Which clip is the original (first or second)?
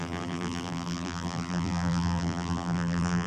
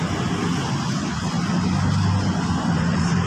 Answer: second